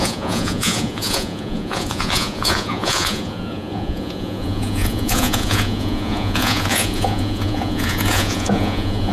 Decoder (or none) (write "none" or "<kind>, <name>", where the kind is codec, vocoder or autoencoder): vocoder, Vocos